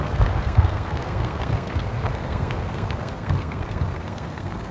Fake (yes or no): yes